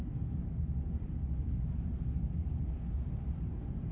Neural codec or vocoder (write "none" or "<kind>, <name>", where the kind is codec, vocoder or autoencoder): none